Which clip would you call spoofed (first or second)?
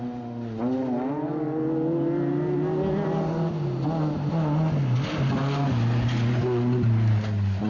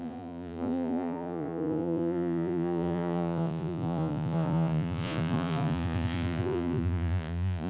second